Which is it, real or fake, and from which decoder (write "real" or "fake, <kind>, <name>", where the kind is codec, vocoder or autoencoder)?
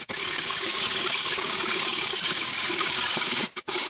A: fake, codec, DAC